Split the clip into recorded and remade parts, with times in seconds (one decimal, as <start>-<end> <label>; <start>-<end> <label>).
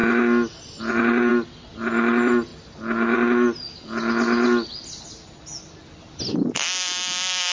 0.0-7.5 recorded